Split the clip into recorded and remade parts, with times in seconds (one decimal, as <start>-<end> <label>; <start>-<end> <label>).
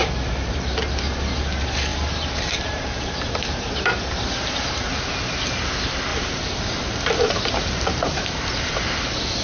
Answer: 0.0-0.7 remade; 0.7-1.9 recorded; 1.9-4.7 remade; 4.7-6.1 recorded; 6.1-8.3 remade; 8.3-9.4 recorded